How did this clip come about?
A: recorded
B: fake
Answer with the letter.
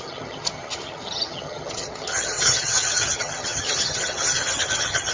B